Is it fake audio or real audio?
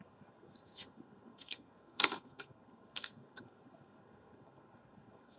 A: fake